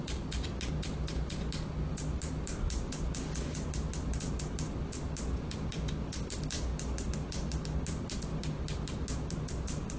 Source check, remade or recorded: recorded